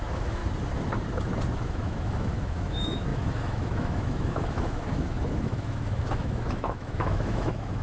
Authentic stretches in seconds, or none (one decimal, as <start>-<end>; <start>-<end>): 0.4-1.6